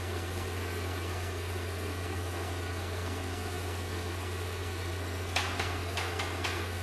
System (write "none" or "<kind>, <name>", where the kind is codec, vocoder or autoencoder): codec, SNAC